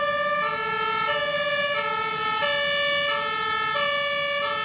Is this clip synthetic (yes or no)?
no